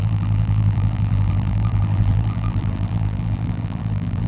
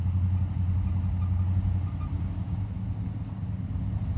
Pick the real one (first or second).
second